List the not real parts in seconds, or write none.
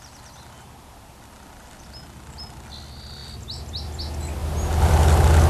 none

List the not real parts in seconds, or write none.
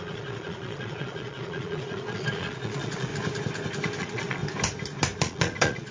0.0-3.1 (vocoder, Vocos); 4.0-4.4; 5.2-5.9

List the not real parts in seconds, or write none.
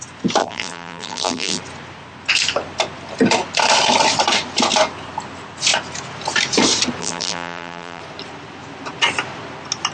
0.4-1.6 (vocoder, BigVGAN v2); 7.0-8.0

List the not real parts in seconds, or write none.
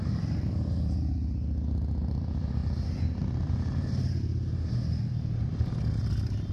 0.0-2.6 (vocoder, BigVGAN v2); 4.2-6.5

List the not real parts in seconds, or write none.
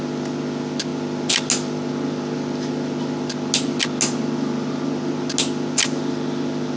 none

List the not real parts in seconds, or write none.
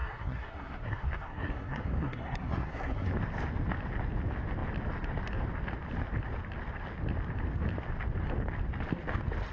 0.0-3.1 (codec, SNAC)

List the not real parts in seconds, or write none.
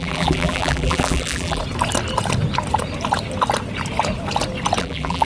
0.0-1.6 (vocoder, BigVGAN v2); 4.8-5.3